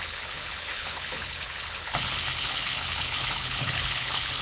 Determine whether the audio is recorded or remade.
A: remade